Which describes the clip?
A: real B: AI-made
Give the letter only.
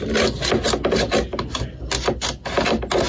A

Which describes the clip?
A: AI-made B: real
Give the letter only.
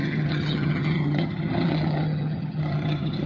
A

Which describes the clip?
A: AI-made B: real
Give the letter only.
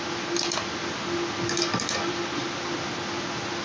B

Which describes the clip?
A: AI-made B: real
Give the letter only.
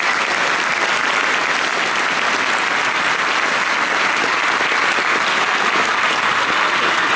B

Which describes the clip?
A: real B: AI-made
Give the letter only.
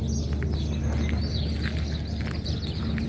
A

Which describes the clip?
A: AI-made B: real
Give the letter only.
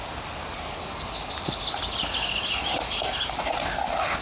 B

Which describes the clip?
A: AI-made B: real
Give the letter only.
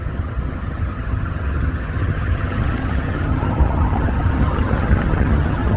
A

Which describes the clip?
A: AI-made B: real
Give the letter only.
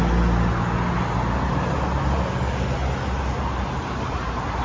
B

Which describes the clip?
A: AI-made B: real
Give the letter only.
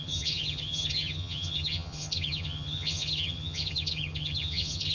A